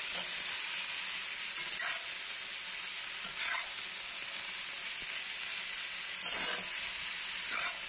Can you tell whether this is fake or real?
real